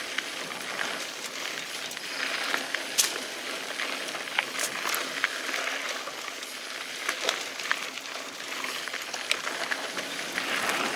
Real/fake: real